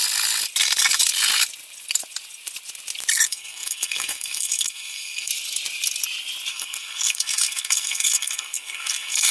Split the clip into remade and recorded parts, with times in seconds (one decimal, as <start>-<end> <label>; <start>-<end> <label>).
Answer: 0.0-3.1 recorded; 3.1-5.3 remade; 5.3-6.5 recorded; 6.5-9.3 remade